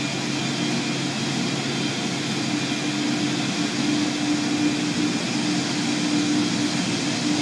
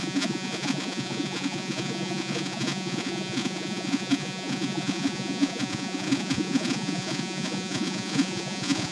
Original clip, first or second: first